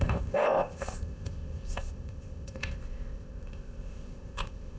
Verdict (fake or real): fake